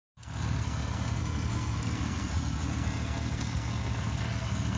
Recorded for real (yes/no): no